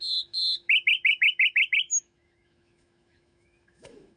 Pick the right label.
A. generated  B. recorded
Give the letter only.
A